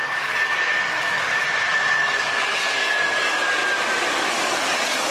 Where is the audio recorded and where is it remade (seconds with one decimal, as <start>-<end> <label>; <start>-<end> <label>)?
0.0-1.4 remade; 1.4-1.9 recorded; 1.9-3.6 remade; 3.6-4.3 recorded; 4.3-5.1 remade